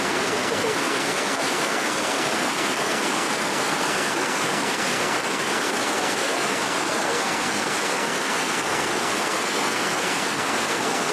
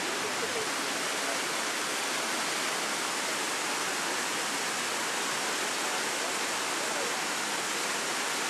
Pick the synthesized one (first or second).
first